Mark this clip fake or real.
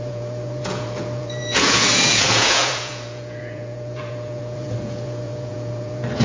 fake